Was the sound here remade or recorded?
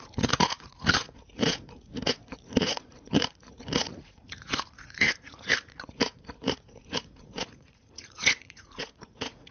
remade